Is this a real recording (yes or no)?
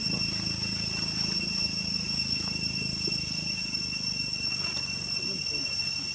yes